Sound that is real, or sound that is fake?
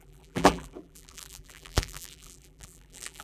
fake